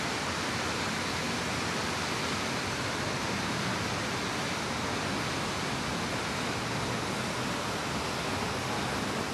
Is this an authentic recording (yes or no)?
yes